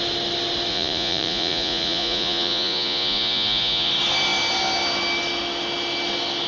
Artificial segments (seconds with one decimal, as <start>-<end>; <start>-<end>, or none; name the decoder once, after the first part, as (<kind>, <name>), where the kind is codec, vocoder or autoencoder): 0.7-3.9 (vocoder, Vocos)